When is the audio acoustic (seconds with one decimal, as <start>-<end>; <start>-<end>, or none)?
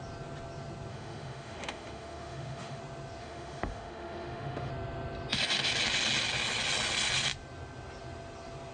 0.0-0.9; 2.8-3.2; 4.7-8.7